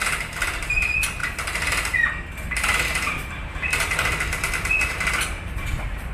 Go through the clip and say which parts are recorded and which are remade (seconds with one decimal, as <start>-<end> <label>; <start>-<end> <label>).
0.0-6.1 recorded